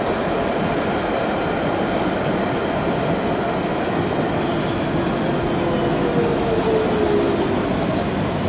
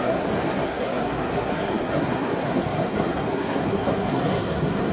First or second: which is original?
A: first